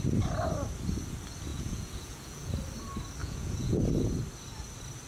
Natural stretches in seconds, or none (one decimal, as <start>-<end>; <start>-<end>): 0.0-1.5; 2.5-3.2; 3.8-5.1